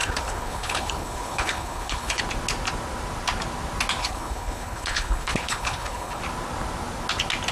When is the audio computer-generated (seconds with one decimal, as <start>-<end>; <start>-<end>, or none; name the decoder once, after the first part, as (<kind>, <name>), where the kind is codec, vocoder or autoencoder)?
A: 0.0-2.2 (codec, HILCodec); 4.0-6.2